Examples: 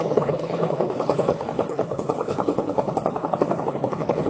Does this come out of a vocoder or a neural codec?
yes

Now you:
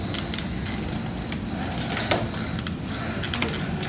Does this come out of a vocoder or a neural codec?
no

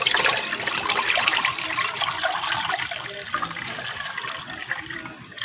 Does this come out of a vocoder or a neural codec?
no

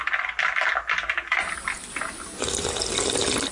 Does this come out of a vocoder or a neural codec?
no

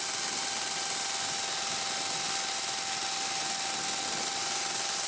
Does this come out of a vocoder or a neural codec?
no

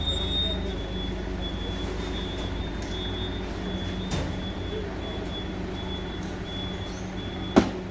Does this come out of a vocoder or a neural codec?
no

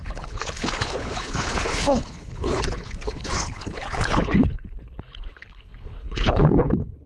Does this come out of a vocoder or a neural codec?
yes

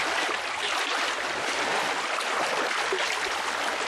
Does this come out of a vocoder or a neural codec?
no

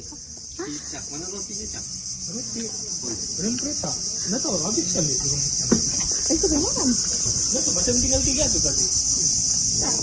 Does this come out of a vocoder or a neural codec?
no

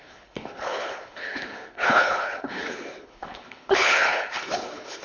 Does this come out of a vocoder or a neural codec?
yes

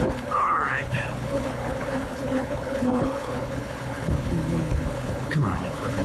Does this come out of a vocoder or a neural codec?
yes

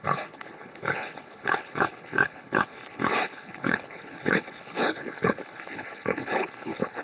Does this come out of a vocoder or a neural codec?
yes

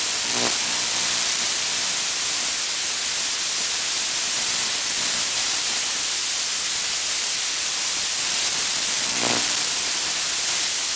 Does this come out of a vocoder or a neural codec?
no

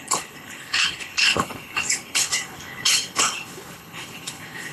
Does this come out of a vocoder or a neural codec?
yes